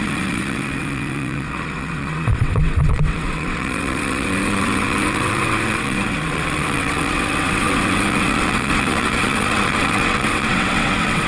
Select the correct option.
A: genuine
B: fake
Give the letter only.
B